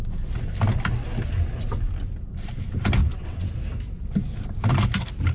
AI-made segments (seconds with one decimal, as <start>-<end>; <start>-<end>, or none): 3.0-3.5